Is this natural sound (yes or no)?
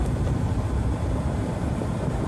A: no